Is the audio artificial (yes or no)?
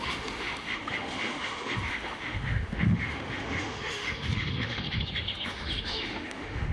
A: yes